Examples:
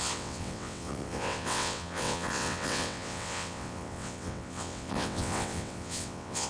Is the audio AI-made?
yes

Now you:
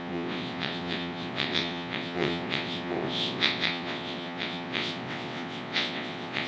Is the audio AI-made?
yes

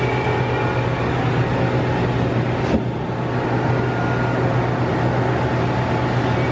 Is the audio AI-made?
no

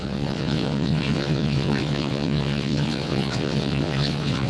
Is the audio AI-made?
yes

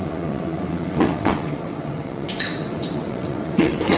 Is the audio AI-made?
yes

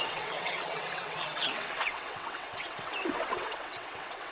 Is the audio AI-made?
yes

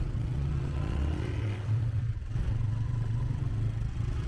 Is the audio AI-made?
yes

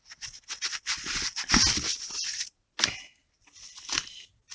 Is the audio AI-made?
no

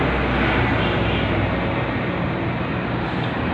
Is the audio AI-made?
no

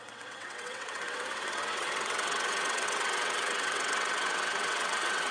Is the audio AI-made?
yes